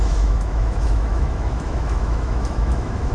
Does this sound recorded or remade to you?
remade